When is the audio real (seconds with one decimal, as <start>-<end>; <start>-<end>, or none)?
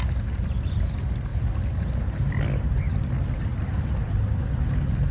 0.0-5.1